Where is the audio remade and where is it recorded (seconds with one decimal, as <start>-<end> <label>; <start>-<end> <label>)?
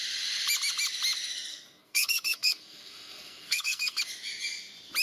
0.0-1.5 recorded; 1.5-4.0 remade; 4.0-5.0 recorded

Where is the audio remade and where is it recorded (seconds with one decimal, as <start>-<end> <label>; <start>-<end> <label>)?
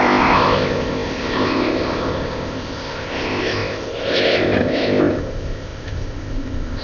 0.0-6.8 remade